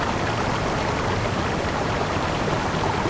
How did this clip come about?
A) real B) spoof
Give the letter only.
A